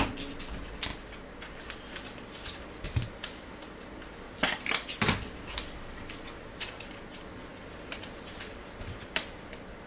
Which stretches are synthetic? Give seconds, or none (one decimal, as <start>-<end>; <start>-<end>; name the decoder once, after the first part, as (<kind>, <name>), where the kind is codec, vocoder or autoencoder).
7.5-8.2 (vocoder, BigVGAN v2)